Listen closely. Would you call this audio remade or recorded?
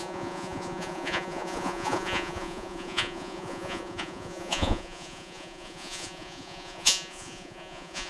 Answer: remade